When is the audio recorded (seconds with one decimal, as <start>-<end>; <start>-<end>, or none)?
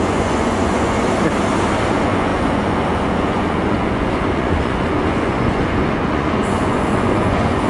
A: 1.0-1.9